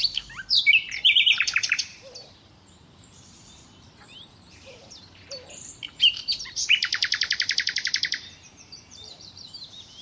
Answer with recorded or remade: remade